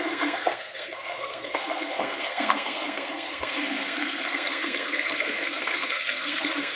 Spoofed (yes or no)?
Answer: yes